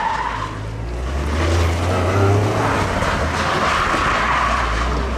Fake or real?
real